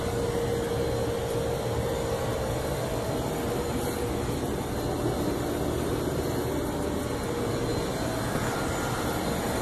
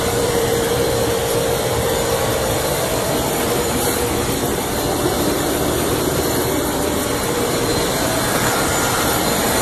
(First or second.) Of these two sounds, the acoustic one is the first